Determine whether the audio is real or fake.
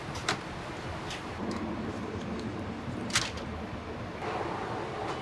real